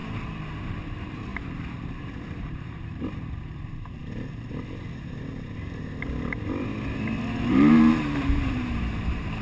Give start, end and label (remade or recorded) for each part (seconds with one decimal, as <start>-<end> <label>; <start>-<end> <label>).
0.0-0.6 recorded; 0.6-4.0 remade; 4.0-7.5 recorded; 7.5-9.4 remade